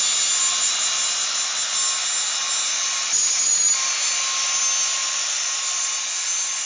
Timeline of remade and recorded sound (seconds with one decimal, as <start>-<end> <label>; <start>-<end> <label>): 0.0-5.0 recorded; 5.0-6.0 remade; 6.0-6.7 recorded